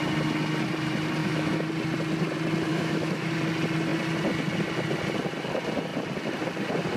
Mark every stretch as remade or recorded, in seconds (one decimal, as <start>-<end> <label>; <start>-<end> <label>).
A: 0.0-1.2 recorded; 1.2-1.7 remade; 1.7-2.7 recorded; 2.7-3.3 remade; 3.3-7.0 recorded

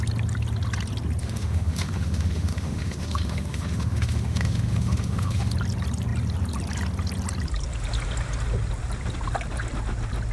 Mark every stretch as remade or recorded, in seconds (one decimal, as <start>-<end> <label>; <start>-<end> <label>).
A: 0.0-1.2 recorded; 1.2-5.5 remade; 5.5-10.3 recorded

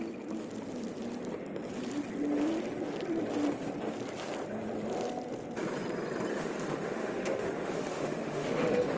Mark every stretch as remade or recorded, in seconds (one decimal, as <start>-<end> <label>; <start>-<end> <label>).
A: 0.0-6.3 recorded; 6.3-9.0 remade

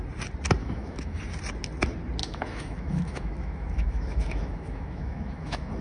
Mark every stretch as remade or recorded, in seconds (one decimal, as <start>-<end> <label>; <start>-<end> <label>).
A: 0.0-0.6 recorded; 0.6-1.2 remade; 1.2-2.2 recorded; 2.2-5.8 remade

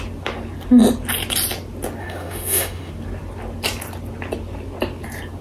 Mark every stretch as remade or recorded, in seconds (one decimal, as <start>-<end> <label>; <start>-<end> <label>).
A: 0.0-2.0 recorded; 2.0-2.9 remade; 2.9-5.4 recorded

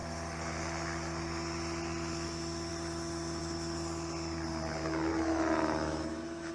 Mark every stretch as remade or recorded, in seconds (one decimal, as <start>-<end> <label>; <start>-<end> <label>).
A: 0.0-5.1 recorded; 5.1-6.5 remade

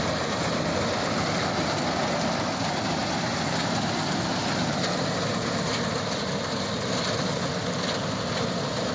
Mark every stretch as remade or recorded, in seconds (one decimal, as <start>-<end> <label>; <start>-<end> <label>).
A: 0.0-8.9 recorded